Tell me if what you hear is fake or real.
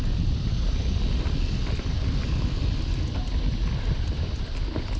real